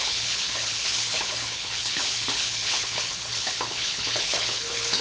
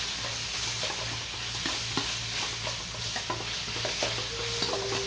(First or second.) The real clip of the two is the second